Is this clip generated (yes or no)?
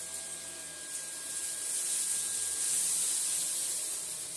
no